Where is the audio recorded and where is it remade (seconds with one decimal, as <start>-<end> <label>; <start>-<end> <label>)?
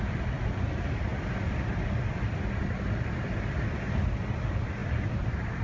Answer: 0.0-4.8 recorded; 4.8-5.6 remade